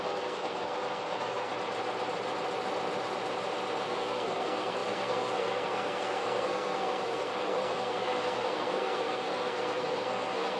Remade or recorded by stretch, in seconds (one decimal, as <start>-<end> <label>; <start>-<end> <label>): 0.0-1.5 remade; 1.5-3.9 recorded; 3.9-10.6 remade